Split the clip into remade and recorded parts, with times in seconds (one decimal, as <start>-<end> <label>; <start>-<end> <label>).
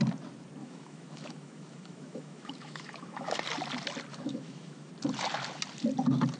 0.0-0.6 recorded; 0.6-3.3 remade; 3.3-4.1 recorded; 4.1-4.9 remade; 4.9-6.4 recorded